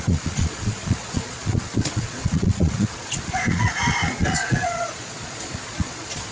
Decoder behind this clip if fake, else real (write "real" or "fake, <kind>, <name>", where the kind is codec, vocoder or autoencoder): fake, vocoder, Vocos